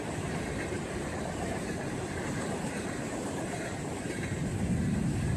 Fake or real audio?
fake